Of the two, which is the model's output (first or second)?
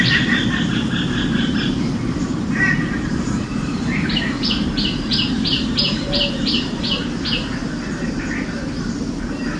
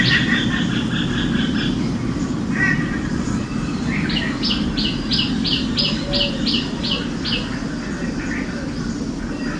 first